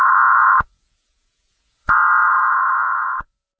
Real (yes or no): no